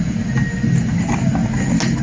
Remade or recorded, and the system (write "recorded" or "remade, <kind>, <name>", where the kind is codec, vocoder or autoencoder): recorded